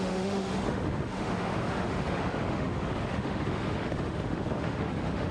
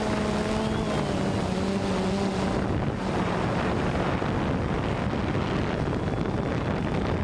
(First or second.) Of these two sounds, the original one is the second